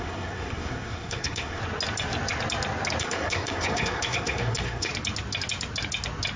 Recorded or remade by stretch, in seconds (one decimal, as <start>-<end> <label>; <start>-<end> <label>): 0.0-1.6 remade; 1.6-3.0 recorded; 3.0-4.9 remade; 4.9-6.4 recorded